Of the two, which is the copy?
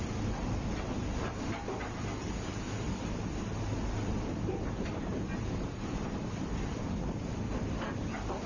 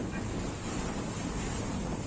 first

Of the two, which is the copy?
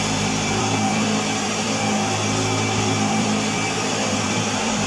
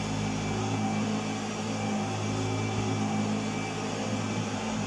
first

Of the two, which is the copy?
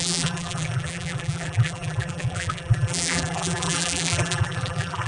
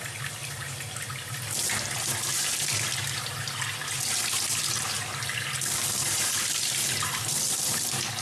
first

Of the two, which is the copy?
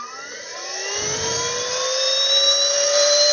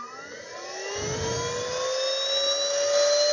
first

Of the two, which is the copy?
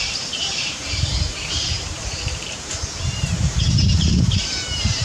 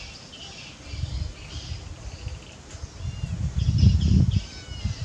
first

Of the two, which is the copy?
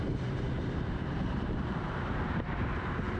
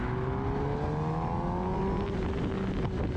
first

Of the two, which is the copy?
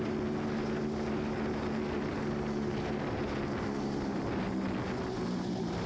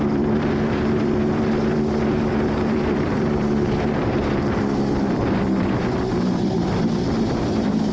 second